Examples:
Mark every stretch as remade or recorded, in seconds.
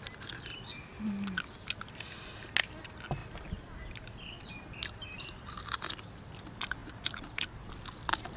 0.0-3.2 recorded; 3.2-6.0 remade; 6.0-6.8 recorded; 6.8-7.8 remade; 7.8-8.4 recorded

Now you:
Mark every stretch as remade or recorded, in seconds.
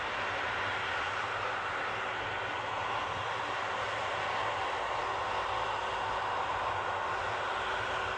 0.0-8.2 recorded